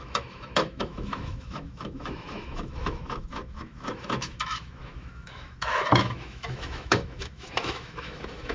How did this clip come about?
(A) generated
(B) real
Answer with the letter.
A